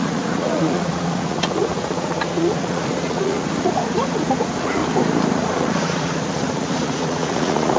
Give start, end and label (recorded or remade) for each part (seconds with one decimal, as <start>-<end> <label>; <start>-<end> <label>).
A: 0.0-4.8 remade; 4.8-5.3 recorded; 5.3-7.8 remade